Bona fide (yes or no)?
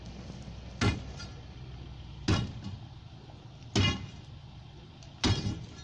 yes